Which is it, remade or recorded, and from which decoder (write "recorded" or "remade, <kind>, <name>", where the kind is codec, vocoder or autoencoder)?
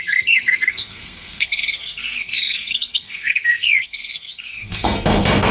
remade, codec, SNAC